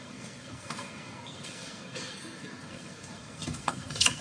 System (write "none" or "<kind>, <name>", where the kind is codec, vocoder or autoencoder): codec, SNAC